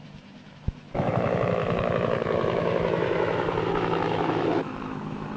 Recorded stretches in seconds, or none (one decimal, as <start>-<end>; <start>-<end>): none